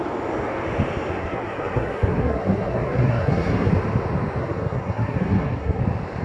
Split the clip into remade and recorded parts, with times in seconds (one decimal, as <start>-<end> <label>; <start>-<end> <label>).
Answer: 0.0-1.1 recorded; 1.1-3.7 remade; 3.7-4.4 recorded; 4.4-5.8 remade; 5.8-6.2 recorded